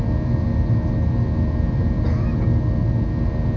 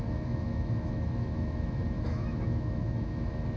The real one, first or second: first